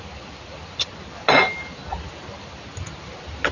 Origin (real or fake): real